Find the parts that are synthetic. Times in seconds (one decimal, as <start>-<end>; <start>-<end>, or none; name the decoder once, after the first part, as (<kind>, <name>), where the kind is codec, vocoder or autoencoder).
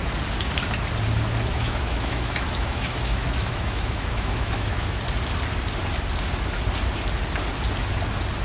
1.5-5.0 (autoencoder, DAC-VAE)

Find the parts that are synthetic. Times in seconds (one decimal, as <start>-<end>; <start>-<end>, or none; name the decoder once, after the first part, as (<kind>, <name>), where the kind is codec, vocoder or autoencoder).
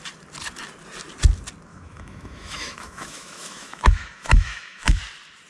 1.7-5.0 (autoencoder, DAC-VAE)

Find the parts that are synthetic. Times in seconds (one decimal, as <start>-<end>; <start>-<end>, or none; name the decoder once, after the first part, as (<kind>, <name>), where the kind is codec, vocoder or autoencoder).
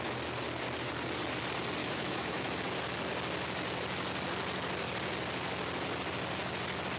1.8-2.6 (autoencoder, DAC-VAE)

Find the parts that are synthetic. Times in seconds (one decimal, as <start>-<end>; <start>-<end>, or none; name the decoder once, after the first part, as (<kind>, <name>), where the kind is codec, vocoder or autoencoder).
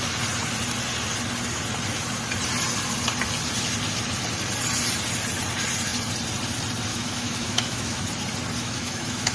6.9-8.0 (autoencoder, DAC-VAE); 8.6-9.3